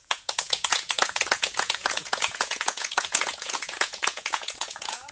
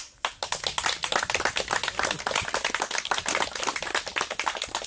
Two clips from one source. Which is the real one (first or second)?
second